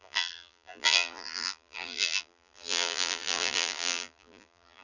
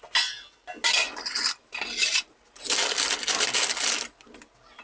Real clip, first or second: second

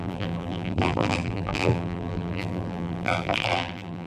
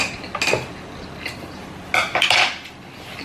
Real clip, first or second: second